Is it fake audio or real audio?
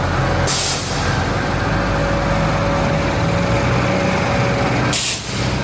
real